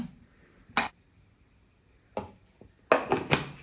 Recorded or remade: recorded